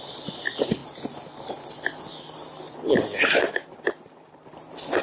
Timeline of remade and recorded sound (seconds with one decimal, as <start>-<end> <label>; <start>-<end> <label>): 0.0-5.0 recorded